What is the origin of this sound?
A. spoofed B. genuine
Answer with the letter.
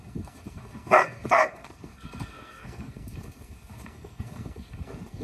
A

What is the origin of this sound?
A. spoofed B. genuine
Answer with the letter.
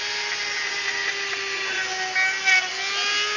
B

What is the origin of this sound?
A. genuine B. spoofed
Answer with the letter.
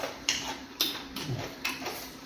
B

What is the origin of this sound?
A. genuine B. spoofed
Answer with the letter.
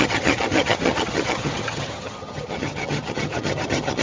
B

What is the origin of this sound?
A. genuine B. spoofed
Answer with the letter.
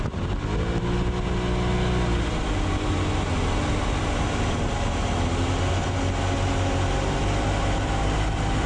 A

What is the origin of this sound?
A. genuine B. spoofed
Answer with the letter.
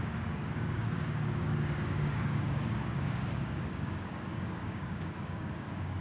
B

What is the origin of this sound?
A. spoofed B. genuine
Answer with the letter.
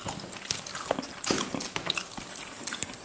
B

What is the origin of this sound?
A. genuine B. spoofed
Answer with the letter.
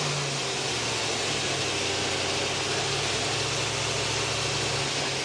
A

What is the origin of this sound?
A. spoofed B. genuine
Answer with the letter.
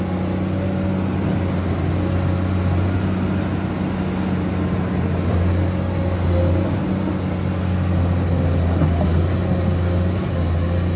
B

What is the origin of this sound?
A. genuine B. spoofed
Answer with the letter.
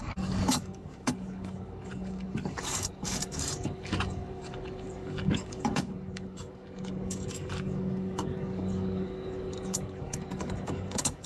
B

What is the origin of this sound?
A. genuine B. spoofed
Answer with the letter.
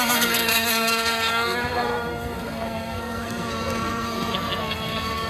B